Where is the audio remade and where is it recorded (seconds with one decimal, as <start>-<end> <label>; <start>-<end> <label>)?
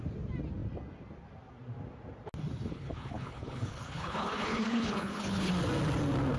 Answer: 0.0-2.7 recorded; 2.7-5.5 remade; 5.5-6.4 recorded